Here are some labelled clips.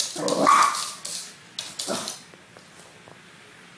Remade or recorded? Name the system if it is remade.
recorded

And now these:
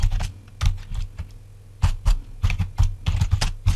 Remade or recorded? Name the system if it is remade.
recorded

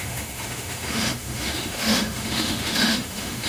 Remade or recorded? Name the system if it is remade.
remade, autoencoder, DAC-VAE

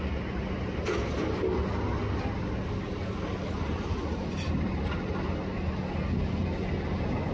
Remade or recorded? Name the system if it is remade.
recorded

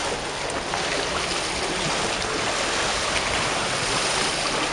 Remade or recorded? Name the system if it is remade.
recorded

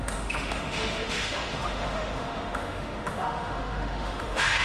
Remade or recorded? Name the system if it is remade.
remade, autoencoder, DAC-VAE